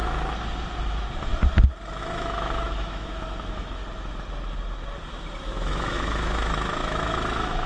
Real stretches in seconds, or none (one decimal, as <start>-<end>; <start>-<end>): 0.0-0.9; 1.3-2.0; 3.8-5.4

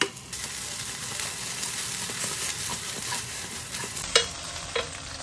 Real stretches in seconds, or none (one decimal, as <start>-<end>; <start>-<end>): 0.0-2.7; 4.3-5.2